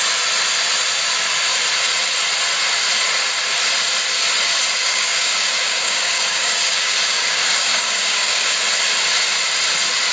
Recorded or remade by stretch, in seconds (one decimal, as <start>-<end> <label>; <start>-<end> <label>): 0.0-4.8 recorded; 4.8-8.6 remade; 8.6-10.1 recorded